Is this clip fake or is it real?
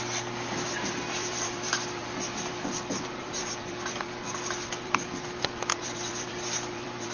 fake